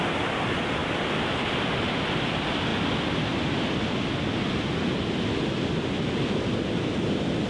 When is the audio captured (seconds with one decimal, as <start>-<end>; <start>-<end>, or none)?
0.0-7.5

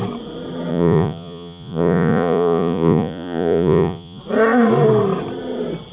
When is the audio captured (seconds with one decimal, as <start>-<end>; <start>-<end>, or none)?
0.0-0.7; 4.2-5.9

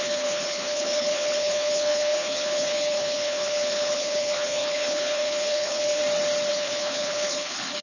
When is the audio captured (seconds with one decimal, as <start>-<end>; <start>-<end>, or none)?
6.0-6.5

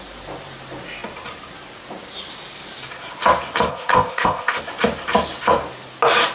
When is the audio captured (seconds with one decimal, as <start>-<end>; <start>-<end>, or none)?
0.0-3.7; 4.6-6.3

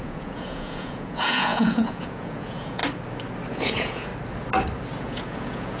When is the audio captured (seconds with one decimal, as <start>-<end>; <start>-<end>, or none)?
2.8-3.5; 4.1-5.0